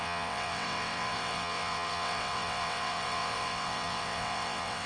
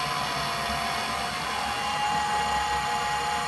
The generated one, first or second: first